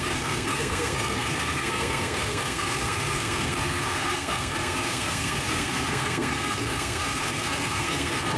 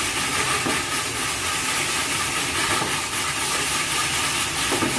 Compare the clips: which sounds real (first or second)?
second